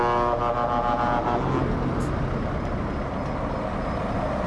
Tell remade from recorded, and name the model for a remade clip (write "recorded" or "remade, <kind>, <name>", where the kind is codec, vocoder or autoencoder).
recorded